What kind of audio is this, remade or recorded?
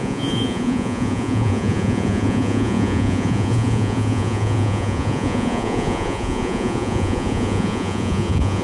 remade